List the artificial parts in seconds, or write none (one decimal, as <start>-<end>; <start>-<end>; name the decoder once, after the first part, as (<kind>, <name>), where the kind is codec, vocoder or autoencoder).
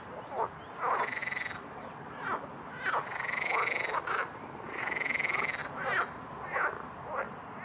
none